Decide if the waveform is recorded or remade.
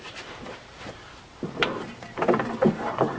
remade